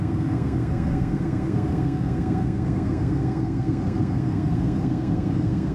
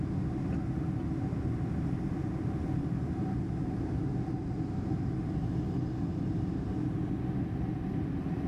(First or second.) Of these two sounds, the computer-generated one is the first